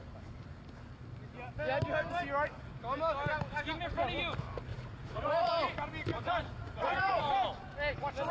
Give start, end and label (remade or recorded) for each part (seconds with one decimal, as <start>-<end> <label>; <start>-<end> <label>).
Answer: 0.0-4.7 recorded; 4.7-5.5 remade; 5.5-6.1 recorded; 6.1-7.3 remade; 7.3-8.3 recorded